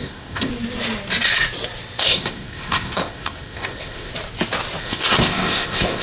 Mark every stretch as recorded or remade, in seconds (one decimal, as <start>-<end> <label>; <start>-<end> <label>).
0.0-0.5 remade; 0.5-2.0 recorded; 2.0-4.1 remade; 4.1-4.8 recorded; 4.8-6.0 remade